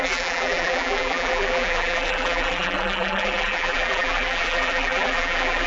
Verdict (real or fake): fake